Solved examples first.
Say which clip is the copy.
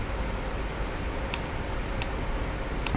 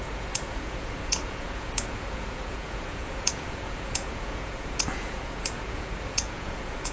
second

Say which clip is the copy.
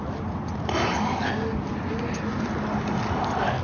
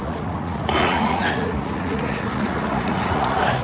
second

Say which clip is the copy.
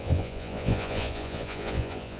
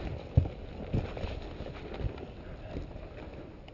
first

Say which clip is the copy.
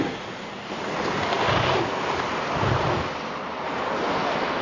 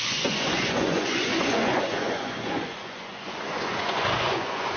second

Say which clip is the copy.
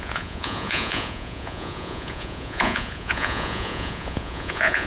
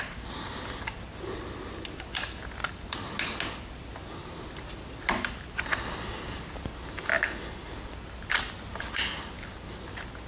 first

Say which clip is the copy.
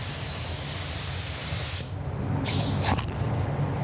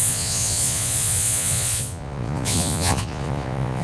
second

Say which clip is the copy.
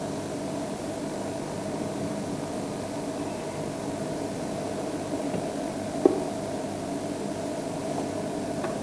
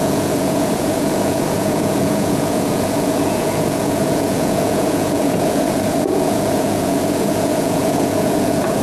second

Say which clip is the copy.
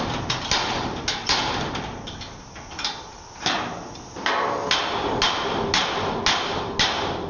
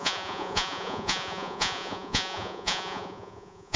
second